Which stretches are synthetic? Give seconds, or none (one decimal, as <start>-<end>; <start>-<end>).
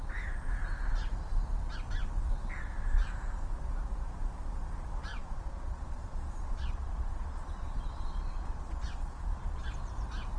5.1-9.6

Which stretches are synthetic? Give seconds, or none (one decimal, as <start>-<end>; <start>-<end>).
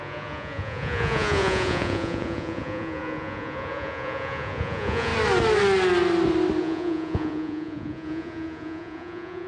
0.0-5.1; 6.6-9.5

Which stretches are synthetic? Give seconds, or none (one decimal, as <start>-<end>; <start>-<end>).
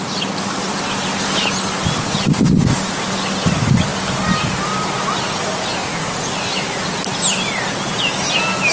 5.8-6.3